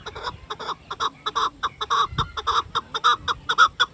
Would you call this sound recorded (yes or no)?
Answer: yes